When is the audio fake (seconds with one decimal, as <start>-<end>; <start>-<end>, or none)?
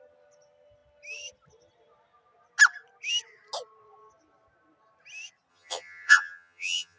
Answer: 5.5-7.0